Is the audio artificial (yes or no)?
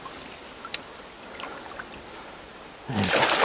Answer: no